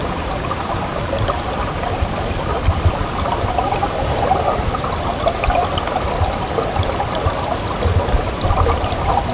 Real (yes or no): yes